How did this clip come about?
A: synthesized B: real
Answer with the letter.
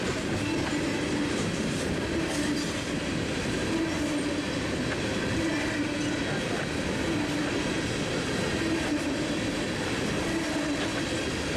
B